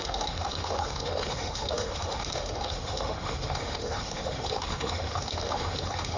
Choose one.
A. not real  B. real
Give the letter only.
A